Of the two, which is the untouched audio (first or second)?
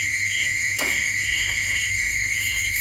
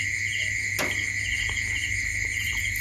second